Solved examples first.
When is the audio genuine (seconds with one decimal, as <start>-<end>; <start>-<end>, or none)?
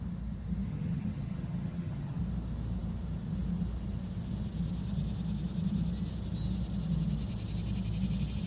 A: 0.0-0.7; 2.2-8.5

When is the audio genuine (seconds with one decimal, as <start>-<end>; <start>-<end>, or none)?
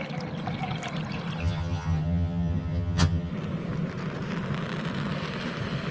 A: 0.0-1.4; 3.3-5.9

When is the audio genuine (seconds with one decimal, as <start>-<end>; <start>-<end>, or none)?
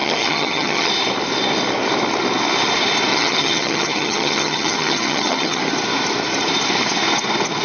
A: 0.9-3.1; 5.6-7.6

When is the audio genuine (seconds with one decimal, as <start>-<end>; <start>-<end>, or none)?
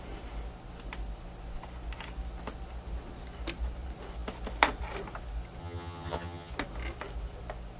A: 0.0-5.6; 6.5-7.8